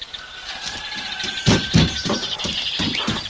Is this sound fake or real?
real